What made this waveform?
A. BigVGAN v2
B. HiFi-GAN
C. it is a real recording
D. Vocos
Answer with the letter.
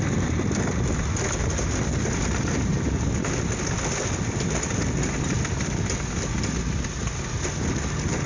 C